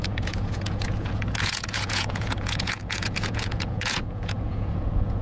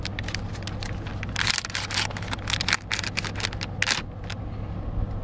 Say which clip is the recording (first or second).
second